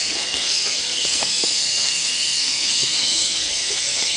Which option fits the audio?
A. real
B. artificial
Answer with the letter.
B